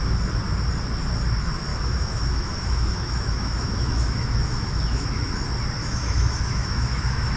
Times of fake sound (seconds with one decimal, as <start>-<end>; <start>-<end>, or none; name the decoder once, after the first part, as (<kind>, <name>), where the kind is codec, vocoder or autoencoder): 1.7-5.3 (autoencoder, DAC-VAE); 5.8-7.4